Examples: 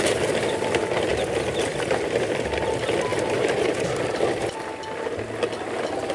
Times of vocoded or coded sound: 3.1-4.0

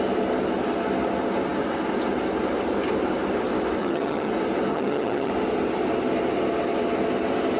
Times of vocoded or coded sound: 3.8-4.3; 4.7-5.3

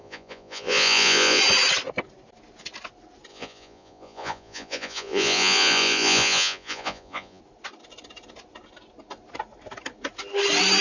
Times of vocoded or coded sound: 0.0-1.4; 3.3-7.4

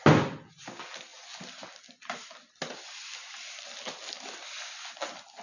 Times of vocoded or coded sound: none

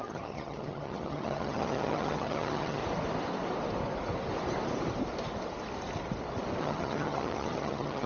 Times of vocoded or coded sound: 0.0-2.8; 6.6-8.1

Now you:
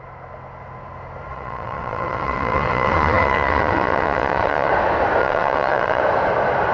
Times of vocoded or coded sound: 1.3-4.7; 5.2-6.0

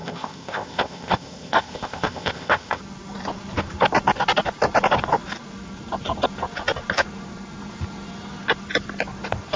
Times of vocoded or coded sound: 0.0-2.8

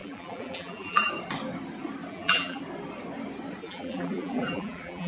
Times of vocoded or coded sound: 0.0-1.1; 2.1-2.6; 3.6-5.1